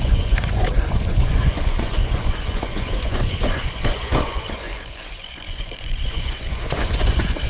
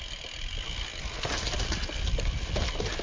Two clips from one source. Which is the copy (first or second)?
first